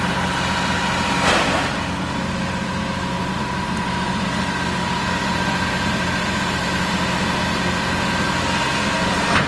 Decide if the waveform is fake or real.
real